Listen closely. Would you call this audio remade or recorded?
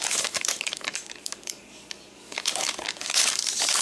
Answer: remade